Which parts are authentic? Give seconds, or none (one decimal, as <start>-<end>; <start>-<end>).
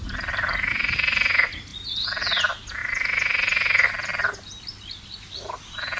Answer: 2.8-6.0